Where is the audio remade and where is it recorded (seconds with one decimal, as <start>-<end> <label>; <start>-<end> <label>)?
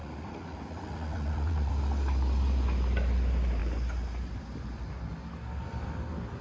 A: 0.0-1.7 remade; 1.7-6.4 recorded